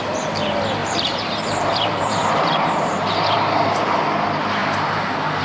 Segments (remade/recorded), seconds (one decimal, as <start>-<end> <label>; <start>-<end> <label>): 0.0-0.8 recorded; 0.8-4.0 remade; 4.0-5.4 recorded